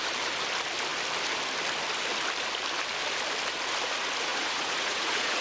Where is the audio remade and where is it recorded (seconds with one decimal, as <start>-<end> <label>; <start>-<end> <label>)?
0.0-4.3 recorded; 4.3-5.4 remade